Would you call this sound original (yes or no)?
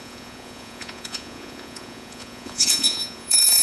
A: no